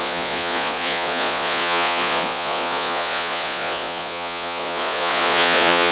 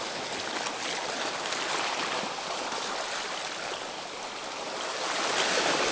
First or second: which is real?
second